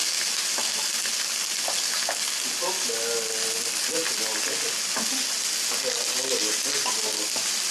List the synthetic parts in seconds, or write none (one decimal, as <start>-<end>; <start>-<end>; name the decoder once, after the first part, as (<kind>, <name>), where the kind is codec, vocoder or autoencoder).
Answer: none